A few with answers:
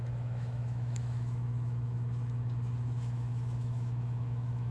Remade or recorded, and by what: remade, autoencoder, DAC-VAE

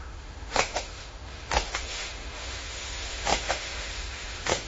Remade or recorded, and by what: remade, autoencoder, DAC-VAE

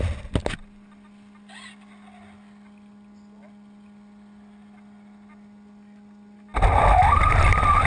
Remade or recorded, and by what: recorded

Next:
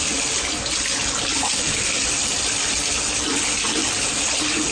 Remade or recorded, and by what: recorded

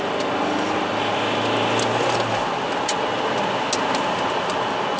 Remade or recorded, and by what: recorded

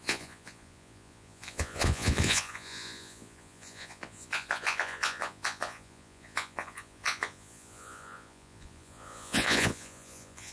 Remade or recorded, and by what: remade, vocoder, Vocos